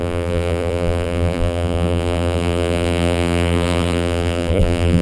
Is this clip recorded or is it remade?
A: remade